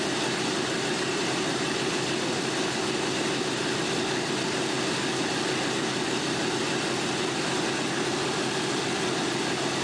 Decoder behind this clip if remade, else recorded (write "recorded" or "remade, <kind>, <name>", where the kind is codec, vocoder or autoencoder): recorded